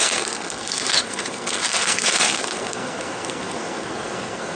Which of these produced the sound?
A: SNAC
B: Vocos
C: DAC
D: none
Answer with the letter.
A